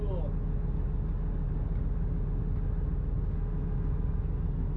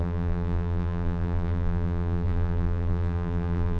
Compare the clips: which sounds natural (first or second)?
first